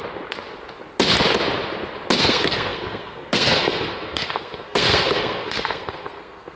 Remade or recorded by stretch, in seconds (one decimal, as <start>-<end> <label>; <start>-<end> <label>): 0.0-2.2 recorded; 2.2-6.6 remade